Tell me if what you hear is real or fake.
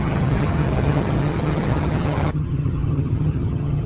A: fake